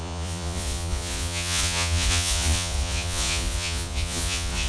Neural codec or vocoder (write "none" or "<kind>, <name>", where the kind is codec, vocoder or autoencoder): vocoder, Vocos